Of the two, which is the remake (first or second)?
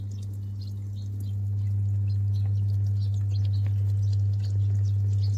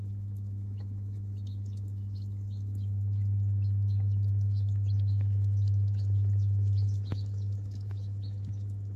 second